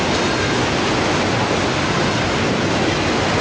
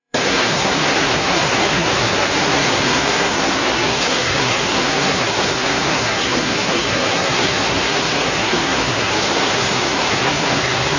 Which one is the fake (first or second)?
second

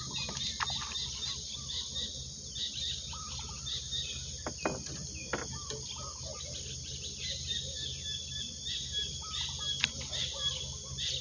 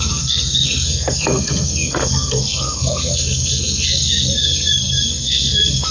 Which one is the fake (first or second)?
second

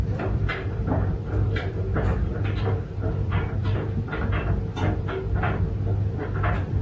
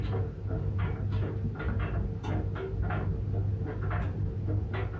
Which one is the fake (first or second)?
first